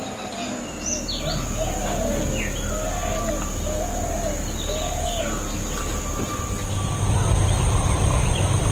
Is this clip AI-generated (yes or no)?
no